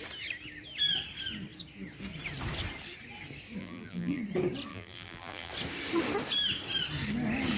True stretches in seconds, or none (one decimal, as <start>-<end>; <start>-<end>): 0.0-3.6; 4.2-4.7; 5.5-7.6